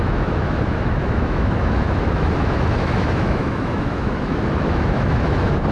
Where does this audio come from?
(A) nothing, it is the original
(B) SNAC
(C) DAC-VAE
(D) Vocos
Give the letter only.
C